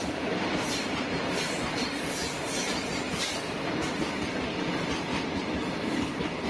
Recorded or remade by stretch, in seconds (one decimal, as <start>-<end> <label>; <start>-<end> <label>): 0.0-6.5 recorded